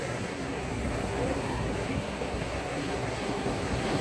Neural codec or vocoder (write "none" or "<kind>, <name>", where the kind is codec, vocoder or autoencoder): codec, SNAC